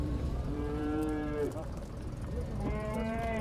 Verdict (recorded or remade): remade